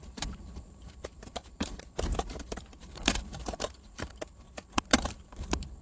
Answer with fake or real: fake